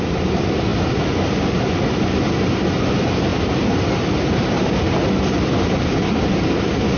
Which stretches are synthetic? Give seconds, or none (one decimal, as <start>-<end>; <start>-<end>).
none